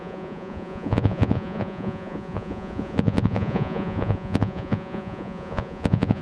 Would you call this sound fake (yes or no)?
yes